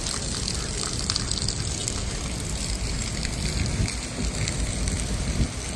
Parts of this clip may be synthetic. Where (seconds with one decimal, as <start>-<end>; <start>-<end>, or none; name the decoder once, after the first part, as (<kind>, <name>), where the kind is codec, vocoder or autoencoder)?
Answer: none